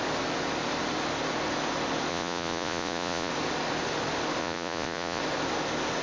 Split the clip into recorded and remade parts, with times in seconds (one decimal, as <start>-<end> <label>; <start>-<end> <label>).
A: 0.0-2.1 recorded; 2.1-3.3 remade; 3.3-4.4 recorded; 4.4-5.2 remade; 5.2-6.0 recorded